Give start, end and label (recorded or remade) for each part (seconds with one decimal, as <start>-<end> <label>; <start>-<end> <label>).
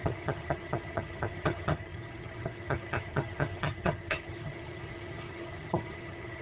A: 0.0-6.4 remade